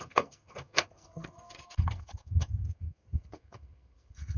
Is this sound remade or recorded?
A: remade